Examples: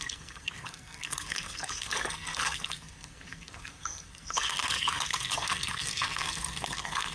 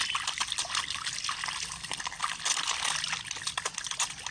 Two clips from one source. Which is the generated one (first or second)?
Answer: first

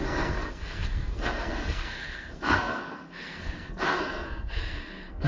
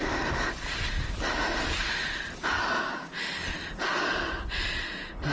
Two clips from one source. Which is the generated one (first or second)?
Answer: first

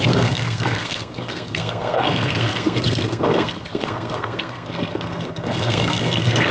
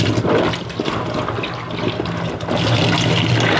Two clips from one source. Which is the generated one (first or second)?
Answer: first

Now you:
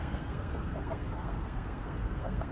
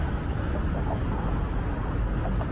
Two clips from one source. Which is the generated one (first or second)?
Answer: first